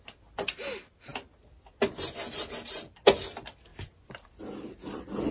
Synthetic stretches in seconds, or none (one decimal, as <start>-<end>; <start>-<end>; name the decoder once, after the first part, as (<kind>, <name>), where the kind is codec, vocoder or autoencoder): none